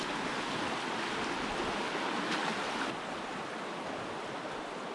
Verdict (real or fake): real